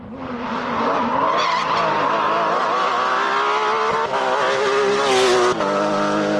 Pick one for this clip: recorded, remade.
recorded